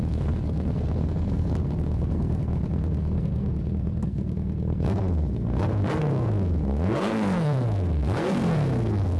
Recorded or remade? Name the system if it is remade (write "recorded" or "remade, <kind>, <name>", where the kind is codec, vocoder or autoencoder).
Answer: remade, codec, SNAC